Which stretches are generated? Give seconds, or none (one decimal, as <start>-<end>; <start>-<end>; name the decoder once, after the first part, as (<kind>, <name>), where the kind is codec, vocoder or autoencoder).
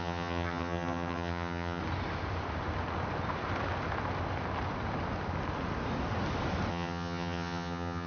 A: 0.0-1.8 (vocoder, HiFi-GAN); 6.7-8.1